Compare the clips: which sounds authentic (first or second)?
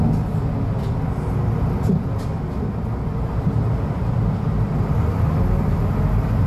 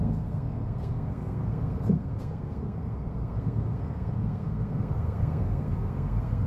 first